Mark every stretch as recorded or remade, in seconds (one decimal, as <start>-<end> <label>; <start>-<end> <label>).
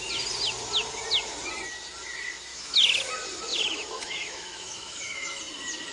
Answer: 0.0-2.5 recorded; 2.5-3.1 remade; 3.1-3.5 recorded; 3.5-5.4 remade; 5.4-5.9 recorded